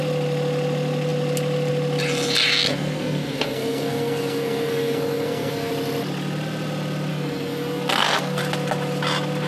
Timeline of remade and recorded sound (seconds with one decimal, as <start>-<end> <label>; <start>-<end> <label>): 0.0-2.7 recorded; 2.7-5.7 remade; 5.7-7.1 recorded; 7.1-8.4 remade; 8.4-9.5 recorded